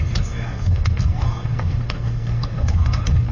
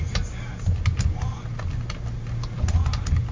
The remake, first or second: first